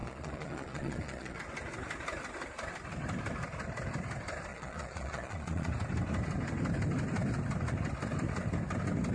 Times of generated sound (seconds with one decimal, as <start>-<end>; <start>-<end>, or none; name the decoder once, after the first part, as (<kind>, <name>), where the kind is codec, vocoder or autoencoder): 0.0-1.4 (vocoder, Vocos); 4.5-5.7